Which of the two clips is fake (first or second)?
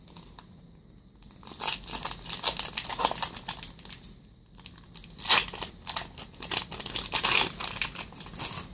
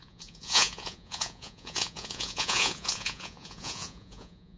second